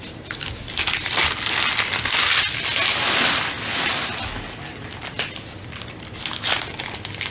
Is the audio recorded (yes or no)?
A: yes